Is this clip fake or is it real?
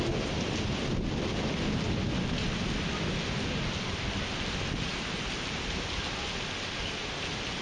real